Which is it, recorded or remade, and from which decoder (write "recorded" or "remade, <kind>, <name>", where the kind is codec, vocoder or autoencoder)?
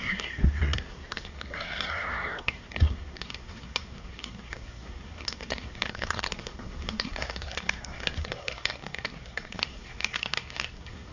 remade, codec, SNAC